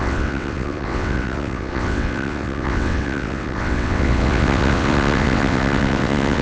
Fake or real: fake